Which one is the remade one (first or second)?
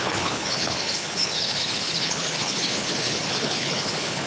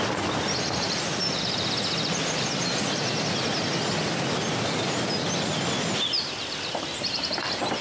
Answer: first